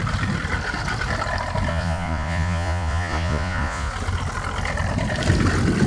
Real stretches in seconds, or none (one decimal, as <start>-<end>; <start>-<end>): 0.0-1.7; 3.9-5.9